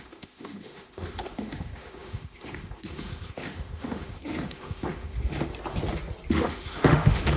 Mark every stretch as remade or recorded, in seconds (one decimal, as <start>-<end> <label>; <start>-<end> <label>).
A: 0.0-5.5 remade; 5.5-6.3 recorded; 6.3-7.4 remade